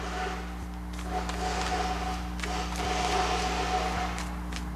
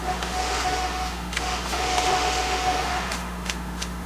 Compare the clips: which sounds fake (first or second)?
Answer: second